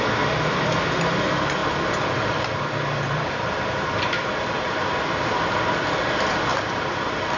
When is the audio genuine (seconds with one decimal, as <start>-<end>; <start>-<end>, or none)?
0.0-1.6; 6.0-6.5